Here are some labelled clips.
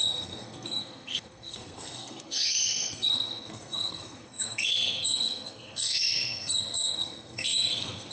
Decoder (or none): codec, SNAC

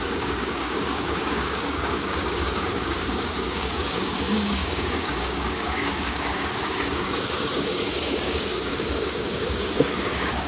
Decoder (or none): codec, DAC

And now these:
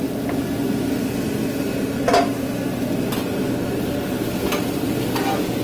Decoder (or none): none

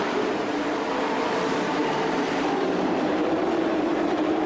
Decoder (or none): vocoder, BigVGAN v2